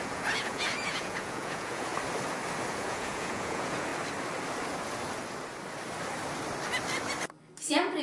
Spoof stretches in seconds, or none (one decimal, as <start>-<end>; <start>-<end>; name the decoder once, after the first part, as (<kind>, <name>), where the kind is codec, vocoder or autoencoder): 0.0-1.9 (vocoder, Vocos); 2.7-3.9